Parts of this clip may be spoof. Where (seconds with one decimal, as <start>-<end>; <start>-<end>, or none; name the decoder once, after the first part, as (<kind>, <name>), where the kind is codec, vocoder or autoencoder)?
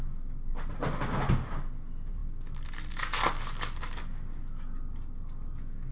none